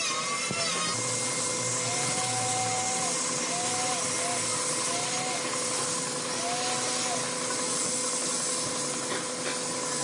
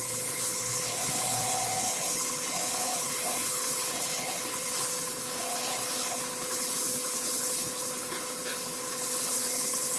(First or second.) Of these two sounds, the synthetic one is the second